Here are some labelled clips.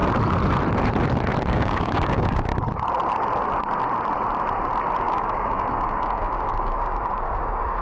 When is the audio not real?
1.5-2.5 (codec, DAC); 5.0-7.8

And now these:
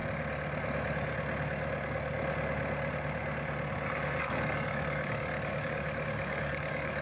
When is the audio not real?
4.2-7.0 (codec, DAC)